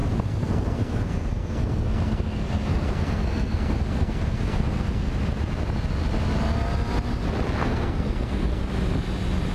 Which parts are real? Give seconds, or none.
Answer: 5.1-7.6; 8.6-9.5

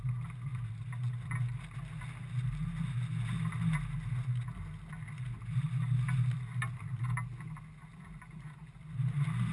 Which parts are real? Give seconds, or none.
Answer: 0.0-9.5

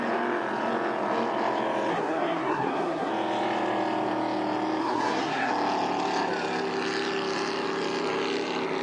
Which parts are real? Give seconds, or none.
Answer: 0.0-1.9; 3.1-4.8; 5.5-8.8

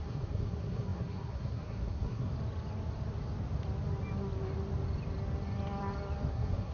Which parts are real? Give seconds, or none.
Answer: 2.3-6.3